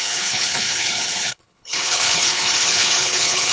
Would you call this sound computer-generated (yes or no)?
yes